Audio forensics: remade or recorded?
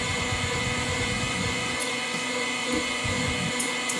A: remade